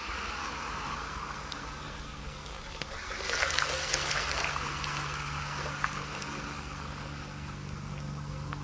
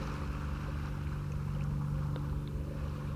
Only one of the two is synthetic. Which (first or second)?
first